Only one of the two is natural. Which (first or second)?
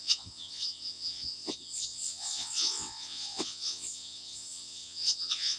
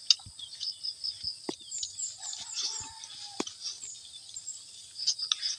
second